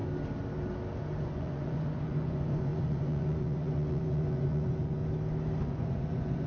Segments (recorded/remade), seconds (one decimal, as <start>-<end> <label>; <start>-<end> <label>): 0.0-1.2 recorded; 1.2-5.0 remade; 5.0-5.6 recorded; 5.6-6.5 remade